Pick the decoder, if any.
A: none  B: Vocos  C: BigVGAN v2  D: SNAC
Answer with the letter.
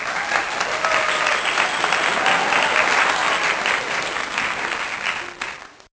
A